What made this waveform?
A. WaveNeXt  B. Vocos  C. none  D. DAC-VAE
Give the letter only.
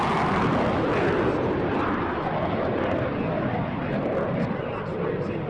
C